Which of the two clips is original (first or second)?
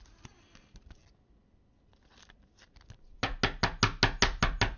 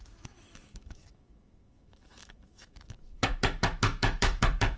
first